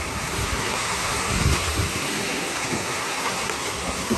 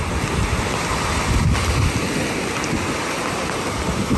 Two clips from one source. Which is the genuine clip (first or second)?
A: second